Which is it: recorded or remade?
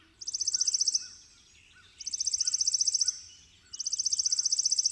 recorded